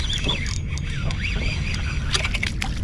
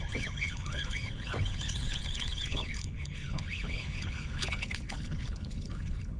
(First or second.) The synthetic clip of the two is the second